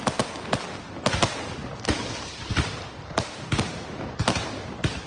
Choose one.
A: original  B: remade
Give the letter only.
A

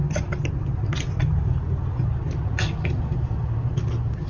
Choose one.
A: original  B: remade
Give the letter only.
A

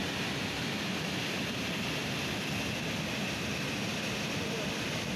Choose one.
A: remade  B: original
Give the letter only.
B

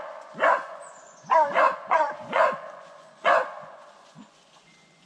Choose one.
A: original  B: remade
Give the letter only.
B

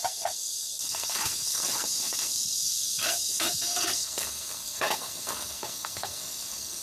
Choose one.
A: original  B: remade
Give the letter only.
B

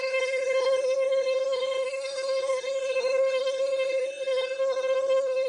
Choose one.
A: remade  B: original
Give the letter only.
A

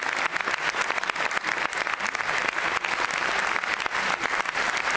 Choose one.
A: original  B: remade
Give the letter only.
A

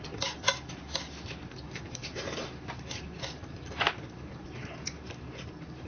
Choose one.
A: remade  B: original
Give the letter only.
B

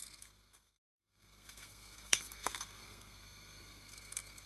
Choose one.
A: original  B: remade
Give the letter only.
B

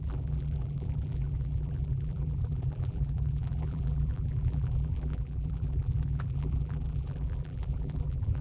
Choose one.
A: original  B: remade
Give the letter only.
B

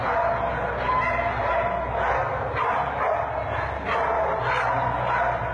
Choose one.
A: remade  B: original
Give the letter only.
B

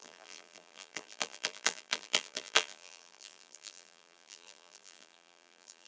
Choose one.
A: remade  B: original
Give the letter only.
A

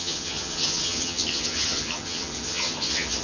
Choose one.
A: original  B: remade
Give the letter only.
B